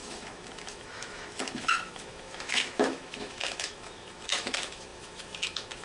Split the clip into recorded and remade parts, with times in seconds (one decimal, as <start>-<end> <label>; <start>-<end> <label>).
0.0-5.8 remade